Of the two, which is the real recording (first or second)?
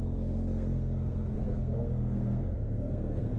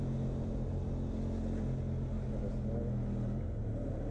second